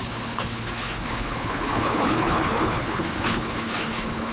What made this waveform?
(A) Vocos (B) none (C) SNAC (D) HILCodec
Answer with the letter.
D